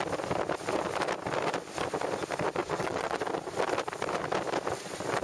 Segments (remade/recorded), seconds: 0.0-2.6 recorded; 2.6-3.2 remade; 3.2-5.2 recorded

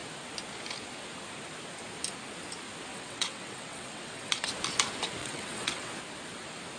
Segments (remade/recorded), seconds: 0.0-2.9 recorded; 2.9-4.5 remade; 4.5-5.2 recorded; 5.2-5.9 remade; 5.9-6.8 recorded

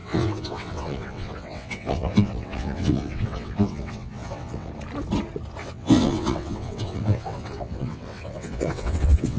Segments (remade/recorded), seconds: 0.0-4.7 remade; 4.7-5.6 recorded; 5.6-9.4 remade

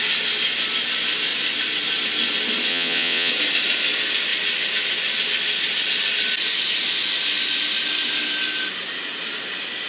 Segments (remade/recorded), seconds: 0.0-2.7 recorded; 2.7-3.3 remade; 3.3-9.9 recorded

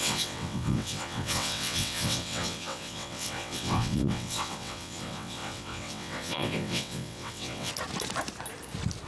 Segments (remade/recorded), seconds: 0.0-7.7 remade; 7.7-9.1 recorded

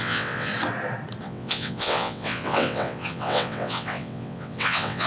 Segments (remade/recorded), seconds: 0.0-0.5 remade; 0.5-1.2 recorded; 1.2-5.1 remade